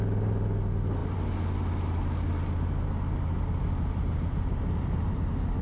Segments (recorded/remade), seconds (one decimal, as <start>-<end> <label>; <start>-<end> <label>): 0.0-5.6 recorded